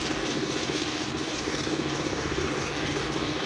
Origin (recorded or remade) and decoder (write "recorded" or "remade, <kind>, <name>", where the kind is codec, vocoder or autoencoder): remade, codec, DAC